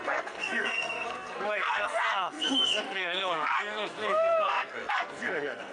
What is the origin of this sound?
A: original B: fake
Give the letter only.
B